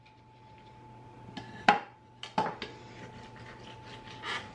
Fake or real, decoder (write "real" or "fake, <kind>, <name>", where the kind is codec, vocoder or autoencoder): real